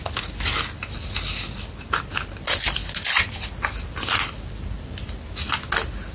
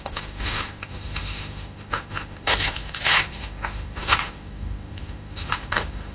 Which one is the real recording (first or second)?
first